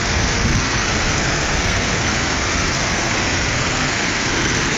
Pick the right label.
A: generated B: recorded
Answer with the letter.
A